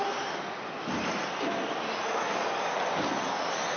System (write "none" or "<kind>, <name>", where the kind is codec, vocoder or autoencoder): none